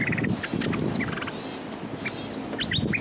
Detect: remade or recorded recorded